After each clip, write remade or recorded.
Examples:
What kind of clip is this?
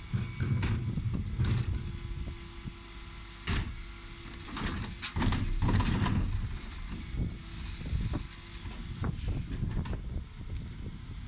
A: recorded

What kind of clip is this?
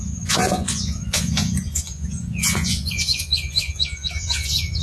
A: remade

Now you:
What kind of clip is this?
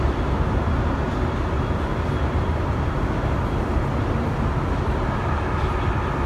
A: recorded